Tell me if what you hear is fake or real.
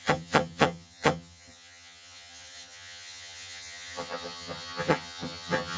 fake